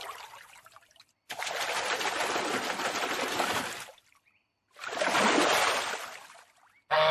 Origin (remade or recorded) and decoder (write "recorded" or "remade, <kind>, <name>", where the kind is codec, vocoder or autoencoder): recorded